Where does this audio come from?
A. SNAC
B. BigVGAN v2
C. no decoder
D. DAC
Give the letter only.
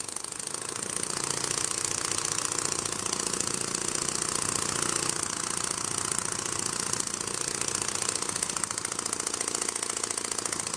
C